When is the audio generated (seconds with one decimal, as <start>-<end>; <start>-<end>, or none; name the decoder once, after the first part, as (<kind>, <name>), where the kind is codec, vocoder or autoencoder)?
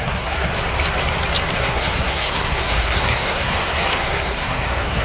0.0-0.5 (codec, SNAC); 1.5-5.0